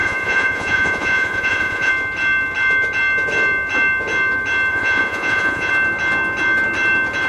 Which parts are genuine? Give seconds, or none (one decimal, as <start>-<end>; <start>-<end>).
1.9-4.7; 5.7-7.3